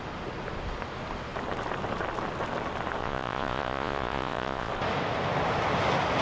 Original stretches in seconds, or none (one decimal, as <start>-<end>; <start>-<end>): 0.0-3.0; 4.7-6.2